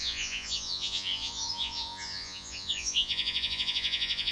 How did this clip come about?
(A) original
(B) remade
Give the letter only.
B